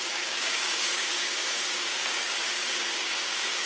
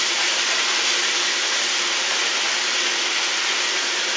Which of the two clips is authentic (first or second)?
second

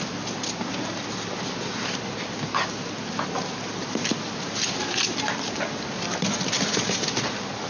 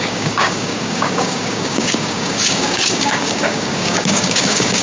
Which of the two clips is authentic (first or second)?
first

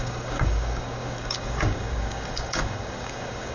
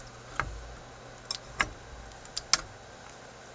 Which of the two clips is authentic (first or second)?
second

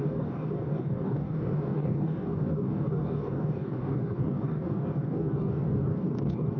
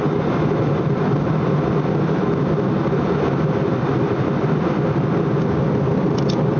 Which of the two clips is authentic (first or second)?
second